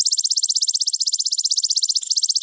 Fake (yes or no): no